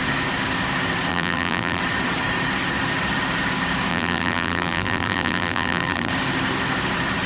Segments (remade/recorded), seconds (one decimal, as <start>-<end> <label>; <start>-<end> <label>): 0.0-1.1 recorded; 1.1-1.8 remade; 1.8-3.9 recorded; 3.9-6.1 remade; 6.1-7.3 recorded